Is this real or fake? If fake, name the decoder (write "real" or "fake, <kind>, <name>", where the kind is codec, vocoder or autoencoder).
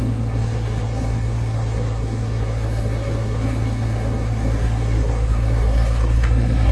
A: fake, codec, SNAC